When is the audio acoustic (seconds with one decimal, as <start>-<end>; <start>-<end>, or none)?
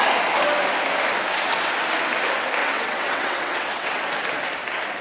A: 0.0-2.6; 4.0-5.0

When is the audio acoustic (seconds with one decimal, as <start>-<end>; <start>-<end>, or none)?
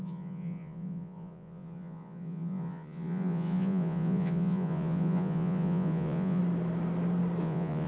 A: 6.4-7.4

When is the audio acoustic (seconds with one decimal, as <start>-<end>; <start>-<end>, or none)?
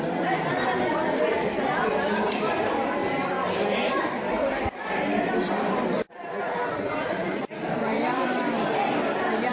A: 3.0-4.0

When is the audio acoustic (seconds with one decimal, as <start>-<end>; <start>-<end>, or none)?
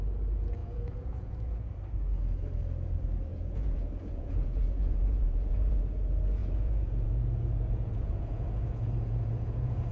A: 0.0-0.6; 1.7-3.3; 5.8-6.4